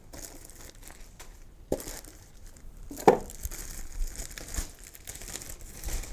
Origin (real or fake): fake